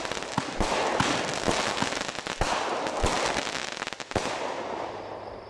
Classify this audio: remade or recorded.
recorded